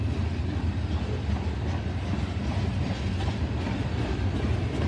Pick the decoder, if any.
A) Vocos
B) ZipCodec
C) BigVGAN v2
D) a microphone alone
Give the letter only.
D